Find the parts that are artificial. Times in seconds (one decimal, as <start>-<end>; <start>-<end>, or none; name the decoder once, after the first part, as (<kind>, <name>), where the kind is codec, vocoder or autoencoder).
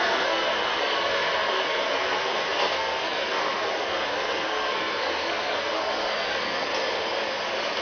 0.0-6.7 (codec, SNAC)